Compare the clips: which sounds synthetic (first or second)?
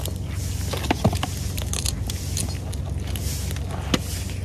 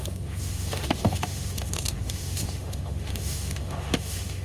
second